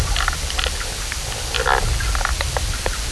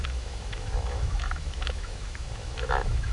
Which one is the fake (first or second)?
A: second